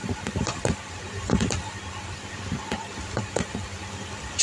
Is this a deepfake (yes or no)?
no